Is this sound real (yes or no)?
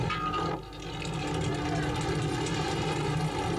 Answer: yes